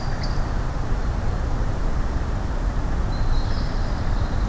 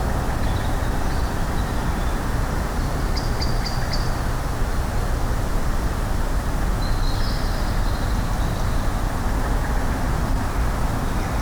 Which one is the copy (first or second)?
first